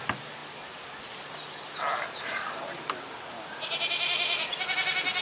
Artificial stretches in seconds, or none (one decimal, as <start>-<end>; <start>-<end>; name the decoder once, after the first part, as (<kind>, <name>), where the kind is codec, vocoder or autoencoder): none